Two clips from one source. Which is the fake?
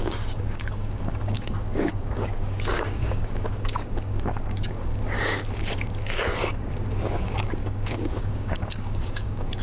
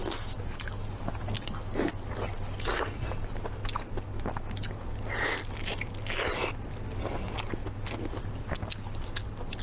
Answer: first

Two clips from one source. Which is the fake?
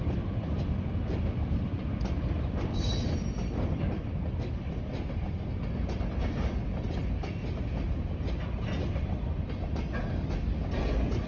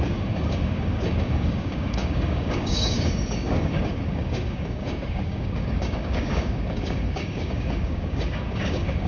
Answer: second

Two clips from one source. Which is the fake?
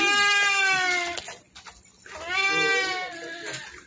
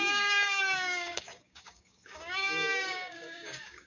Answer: second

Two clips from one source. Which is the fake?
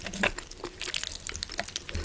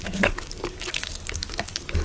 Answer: second